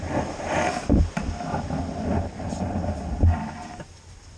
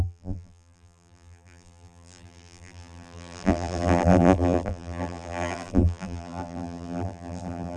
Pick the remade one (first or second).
second